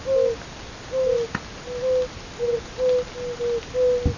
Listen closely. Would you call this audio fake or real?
real